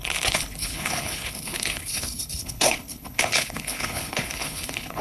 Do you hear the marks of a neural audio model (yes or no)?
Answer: yes